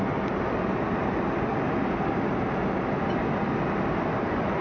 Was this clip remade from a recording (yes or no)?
no